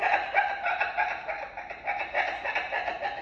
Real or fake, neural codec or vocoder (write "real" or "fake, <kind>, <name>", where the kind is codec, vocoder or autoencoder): real